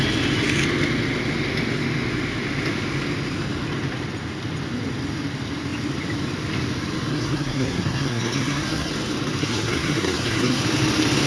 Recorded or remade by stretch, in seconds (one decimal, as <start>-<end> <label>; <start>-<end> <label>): 0.0-7.1 recorded; 7.1-8.9 remade; 8.9-9.4 recorded; 9.4-10.6 remade; 10.6-11.3 recorded